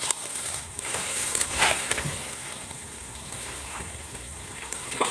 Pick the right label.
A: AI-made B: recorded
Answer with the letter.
A